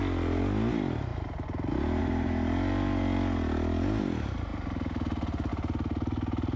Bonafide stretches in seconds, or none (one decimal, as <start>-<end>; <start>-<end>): 0.0-6.6